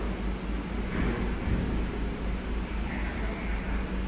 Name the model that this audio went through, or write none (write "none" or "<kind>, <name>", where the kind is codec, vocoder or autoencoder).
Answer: none